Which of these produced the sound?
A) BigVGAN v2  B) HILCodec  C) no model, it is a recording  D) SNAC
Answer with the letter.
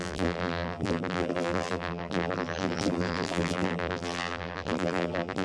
A